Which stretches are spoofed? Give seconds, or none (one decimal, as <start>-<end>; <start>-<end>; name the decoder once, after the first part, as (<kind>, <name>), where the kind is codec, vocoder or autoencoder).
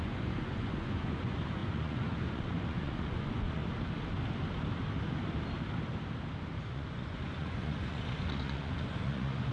0.0-3.6 (vocoder, Vocos); 6.7-9.5